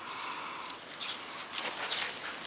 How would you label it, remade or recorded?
recorded